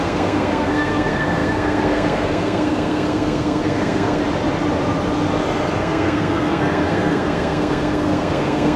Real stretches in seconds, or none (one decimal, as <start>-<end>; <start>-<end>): 4.2-5.8